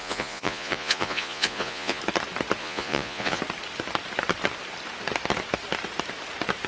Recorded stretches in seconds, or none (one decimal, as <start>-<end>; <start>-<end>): 2.0-2.6; 3.4-6.7